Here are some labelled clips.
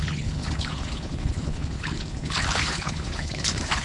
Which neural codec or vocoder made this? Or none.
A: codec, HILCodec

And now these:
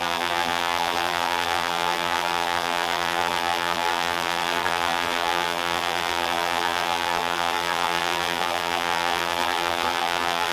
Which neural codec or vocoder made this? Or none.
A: vocoder, BigVGAN v2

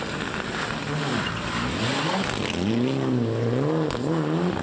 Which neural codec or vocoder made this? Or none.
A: none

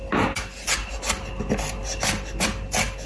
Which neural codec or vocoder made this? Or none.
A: none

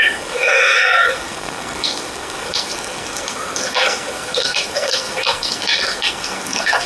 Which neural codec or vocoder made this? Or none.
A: codec, SNAC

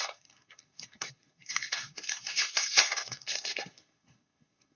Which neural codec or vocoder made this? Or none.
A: codec, SNAC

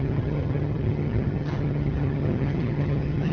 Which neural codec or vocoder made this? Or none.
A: vocoder, HiFi-GAN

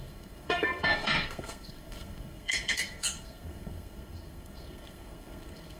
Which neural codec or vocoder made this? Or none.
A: codec, SNAC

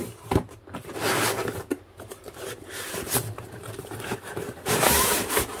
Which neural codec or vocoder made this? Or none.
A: vocoder, BigVGAN v2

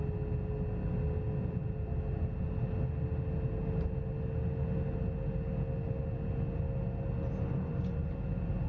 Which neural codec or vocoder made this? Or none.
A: none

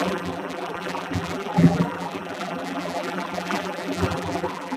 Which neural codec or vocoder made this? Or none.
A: vocoder, BigVGAN v2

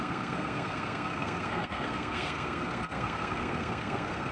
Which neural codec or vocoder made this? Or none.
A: codec, SNAC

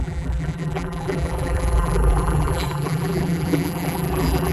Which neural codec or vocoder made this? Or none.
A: vocoder, BigVGAN v2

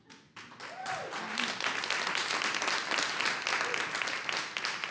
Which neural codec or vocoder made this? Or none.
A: none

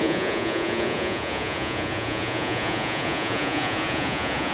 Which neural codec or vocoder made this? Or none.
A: vocoder, Vocos